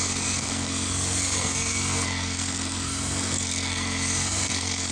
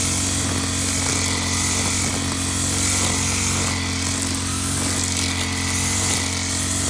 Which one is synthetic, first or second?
first